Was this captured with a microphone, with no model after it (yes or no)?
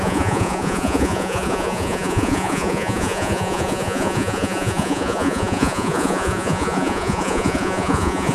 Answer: no